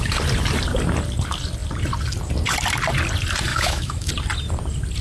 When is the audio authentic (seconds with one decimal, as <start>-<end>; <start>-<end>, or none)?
0.0-3.5; 4.1-5.0